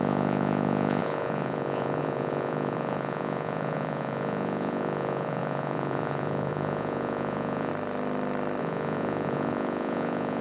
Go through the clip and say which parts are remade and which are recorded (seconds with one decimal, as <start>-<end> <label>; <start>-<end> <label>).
0.0-7.7 remade; 7.7-8.6 recorded; 8.6-10.4 remade